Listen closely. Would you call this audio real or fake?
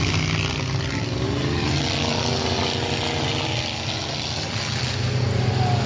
real